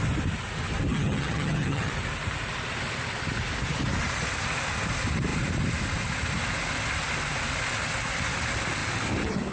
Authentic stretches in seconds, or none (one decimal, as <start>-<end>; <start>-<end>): 0.0-0.9; 1.9-9.5